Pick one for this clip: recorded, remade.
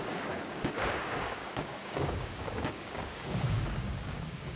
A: remade